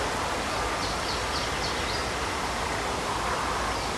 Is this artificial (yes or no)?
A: no